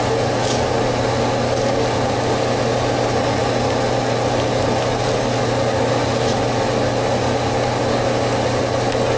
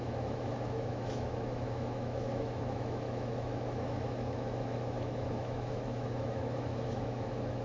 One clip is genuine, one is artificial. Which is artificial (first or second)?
second